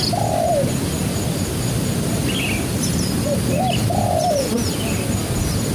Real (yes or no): yes